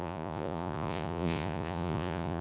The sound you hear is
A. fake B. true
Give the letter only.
A